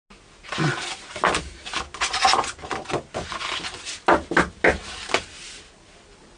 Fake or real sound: real